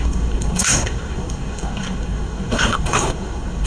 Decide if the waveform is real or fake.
fake